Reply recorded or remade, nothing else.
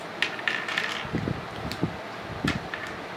recorded